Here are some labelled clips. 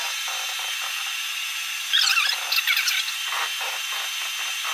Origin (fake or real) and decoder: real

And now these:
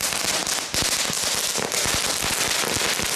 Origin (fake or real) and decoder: real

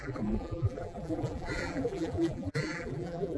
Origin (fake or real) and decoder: fake, vocoder, BigVGAN v2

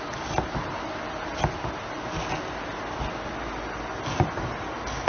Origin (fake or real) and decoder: real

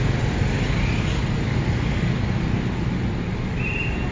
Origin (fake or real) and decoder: real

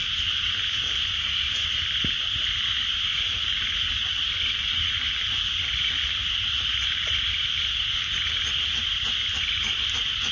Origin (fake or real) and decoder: real